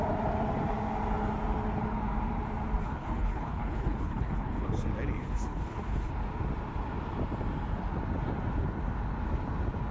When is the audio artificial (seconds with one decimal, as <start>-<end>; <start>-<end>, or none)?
2.8-4.7; 5.2-6.1